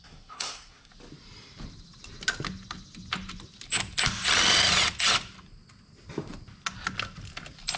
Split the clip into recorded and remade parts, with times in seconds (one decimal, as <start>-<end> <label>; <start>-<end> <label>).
0.0-0.9 remade; 0.9-7.8 recorded